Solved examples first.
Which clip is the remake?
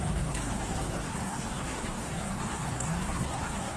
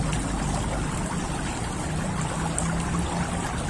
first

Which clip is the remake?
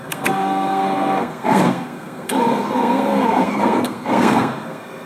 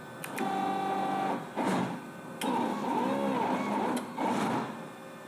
first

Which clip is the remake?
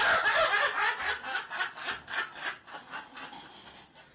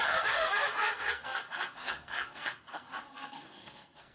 second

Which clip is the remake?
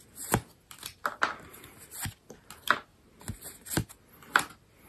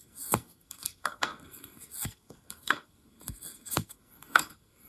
second